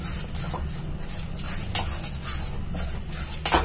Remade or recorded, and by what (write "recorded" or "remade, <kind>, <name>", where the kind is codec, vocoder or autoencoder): recorded